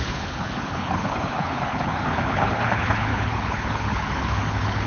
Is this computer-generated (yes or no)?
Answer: yes